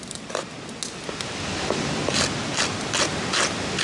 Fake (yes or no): no